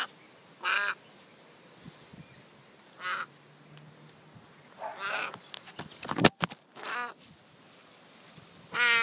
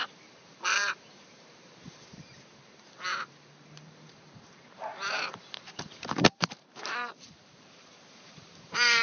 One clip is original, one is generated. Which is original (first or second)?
first